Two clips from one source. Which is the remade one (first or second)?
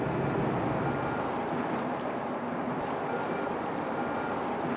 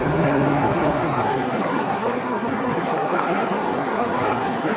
second